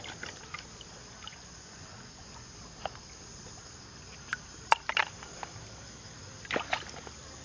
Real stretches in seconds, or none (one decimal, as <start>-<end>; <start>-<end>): 0.0-1.3; 2.6-7.4